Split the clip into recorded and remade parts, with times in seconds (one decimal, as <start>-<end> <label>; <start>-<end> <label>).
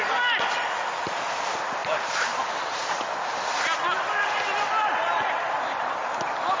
0.0-6.6 recorded